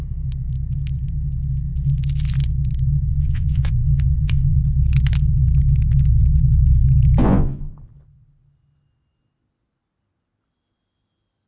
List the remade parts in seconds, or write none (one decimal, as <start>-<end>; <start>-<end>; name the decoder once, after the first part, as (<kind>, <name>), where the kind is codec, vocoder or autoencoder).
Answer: 3.1-4.6 (vocoder, Vocos); 7.2-7.7